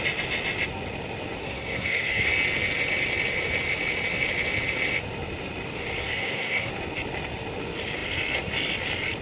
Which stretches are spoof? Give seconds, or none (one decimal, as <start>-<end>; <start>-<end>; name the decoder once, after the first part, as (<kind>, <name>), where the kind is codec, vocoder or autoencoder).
1.4-2.3 (codec, SNAC); 6.0-6.7